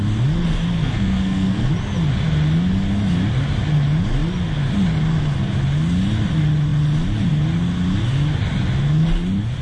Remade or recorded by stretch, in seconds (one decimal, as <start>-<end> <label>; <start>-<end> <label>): 0.0-0.8 recorded; 0.8-1.7 remade; 1.7-9.6 recorded

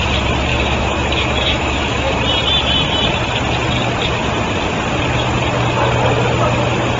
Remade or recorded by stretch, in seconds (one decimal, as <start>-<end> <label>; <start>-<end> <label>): 0.0-0.5 recorded; 0.5-2.2 remade; 2.2-7.0 recorded

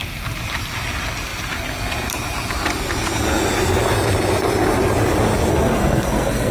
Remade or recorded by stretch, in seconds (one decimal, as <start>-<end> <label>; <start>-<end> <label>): 0.0-5.5 recorded; 5.5-6.5 remade

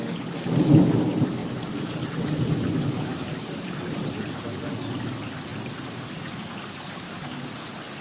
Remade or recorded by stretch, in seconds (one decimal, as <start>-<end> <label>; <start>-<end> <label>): 0.0-1.4 recorded; 1.4-4.6 remade; 4.6-8.0 recorded

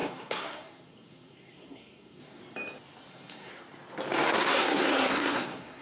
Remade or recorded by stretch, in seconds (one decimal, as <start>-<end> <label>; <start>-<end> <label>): 0.0-2.4 remade; 2.4-3.1 recorded; 3.1-3.5 remade; 3.5-4.3 recorded; 4.3-5.8 remade

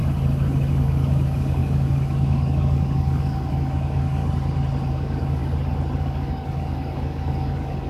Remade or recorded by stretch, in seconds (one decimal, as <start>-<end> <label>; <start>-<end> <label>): 0.0-0.7 recorded; 0.7-4.2 remade; 4.2-4.9 recorded; 4.9-5.4 remade; 5.4-6.0 recorded; 6.0-7.9 remade

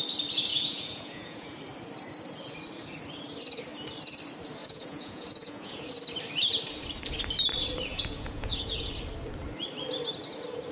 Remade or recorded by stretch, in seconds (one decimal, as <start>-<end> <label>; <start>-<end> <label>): 0.0-0.5 recorded; 0.5-1.6 remade; 1.6-4.6 recorded; 4.6-5.9 remade; 5.9-7.9 recorded; 7.9-8.9 remade; 8.9-10.7 recorded

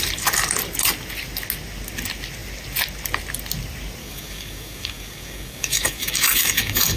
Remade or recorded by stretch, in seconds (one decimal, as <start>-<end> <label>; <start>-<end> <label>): 0.0-4.0 recorded; 4.0-7.0 remade